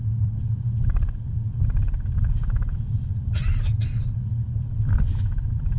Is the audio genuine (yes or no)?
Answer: yes